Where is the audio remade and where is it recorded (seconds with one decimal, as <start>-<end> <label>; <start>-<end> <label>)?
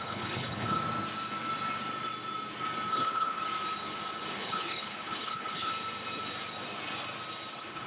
0.0-0.8 remade; 0.8-2.9 recorded; 2.9-3.4 remade; 3.4-4.3 recorded; 4.3-5.7 remade; 5.7-7.5 recorded; 7.5-7.9 remade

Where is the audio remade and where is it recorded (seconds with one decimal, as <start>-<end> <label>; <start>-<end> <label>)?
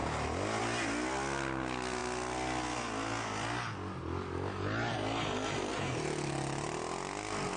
0.0-7.6 recorded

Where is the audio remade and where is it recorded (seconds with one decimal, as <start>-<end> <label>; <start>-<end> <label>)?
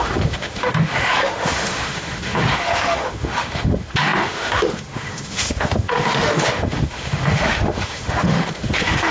0.0-9.1 remade